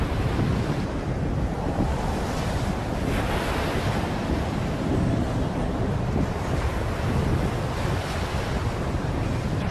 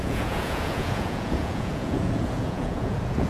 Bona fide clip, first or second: first